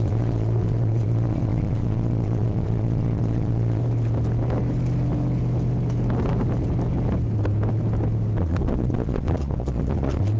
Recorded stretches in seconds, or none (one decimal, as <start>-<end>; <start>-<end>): 3.8-8.4